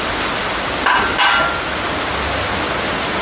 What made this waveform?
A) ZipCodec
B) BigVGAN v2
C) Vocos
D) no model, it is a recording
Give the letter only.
D